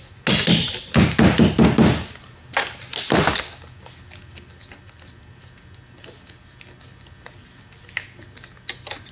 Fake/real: real